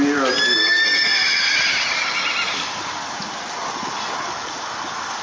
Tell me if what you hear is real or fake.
real